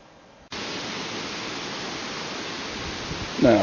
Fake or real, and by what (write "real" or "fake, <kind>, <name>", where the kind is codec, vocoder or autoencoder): real